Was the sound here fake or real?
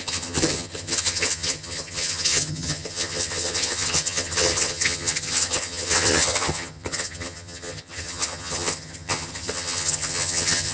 fake